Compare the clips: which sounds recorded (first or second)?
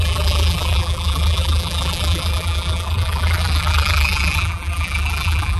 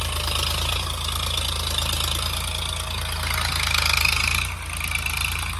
second